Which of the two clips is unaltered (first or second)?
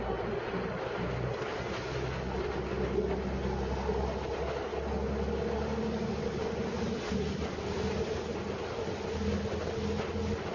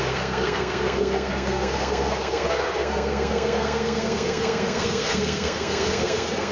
first